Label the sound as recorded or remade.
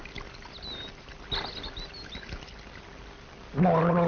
recorded